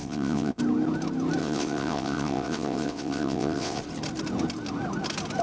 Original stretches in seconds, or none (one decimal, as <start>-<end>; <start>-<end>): 0.6-1.4; 3.8-5.4